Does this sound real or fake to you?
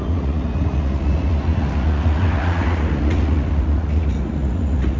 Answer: fake